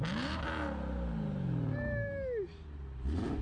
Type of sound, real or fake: real